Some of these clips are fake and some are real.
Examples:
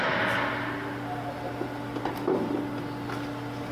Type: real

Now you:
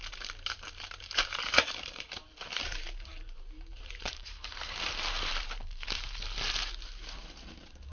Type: fake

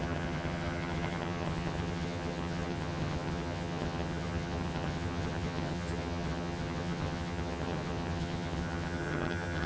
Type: fake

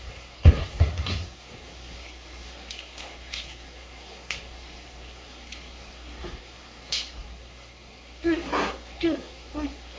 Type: fake